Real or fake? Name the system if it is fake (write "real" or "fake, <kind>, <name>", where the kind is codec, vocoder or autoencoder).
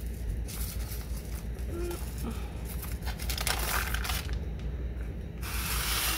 real